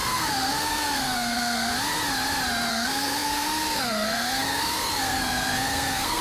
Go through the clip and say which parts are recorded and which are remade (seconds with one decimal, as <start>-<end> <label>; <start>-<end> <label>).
0.0-1.7 remade; 1.7-2.7 recorded; 2.7-6.2 remade